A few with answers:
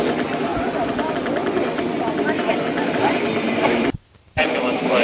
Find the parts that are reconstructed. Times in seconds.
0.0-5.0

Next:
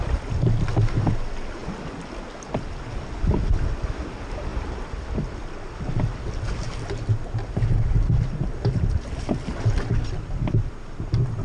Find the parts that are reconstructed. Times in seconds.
none

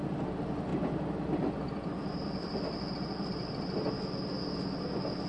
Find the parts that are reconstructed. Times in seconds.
0.7-3.9

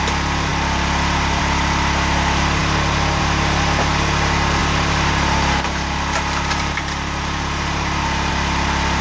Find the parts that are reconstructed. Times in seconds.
4.6-8.3

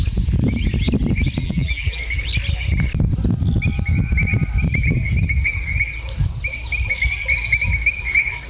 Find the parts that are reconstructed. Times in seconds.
1.4-2.0

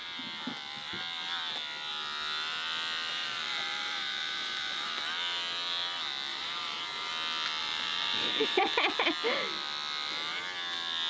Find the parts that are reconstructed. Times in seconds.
3.1-5.0; 6.3-7.1; 7.6-8.6